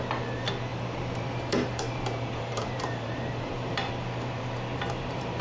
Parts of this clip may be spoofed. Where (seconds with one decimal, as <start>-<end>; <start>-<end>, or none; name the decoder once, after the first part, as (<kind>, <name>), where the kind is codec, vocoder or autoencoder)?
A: 0.7-3.9 (vocoder, BigVGAN v2); 4.7-5.4